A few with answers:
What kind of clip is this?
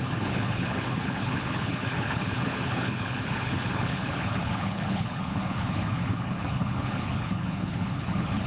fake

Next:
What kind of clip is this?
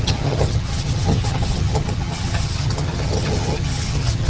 fake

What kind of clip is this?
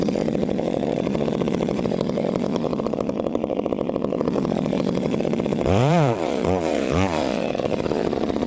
fake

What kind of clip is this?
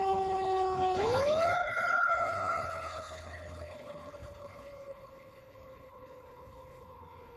fake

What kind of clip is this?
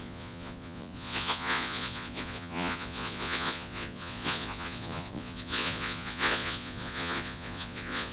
fake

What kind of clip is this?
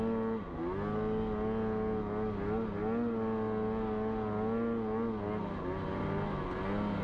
real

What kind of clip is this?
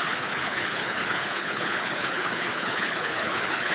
fake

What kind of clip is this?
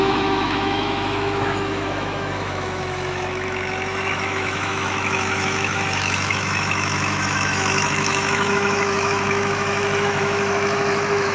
fake